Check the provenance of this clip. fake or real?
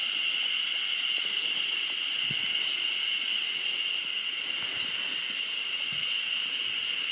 real